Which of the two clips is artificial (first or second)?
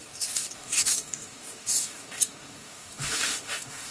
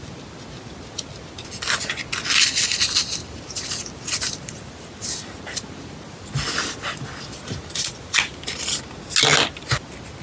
first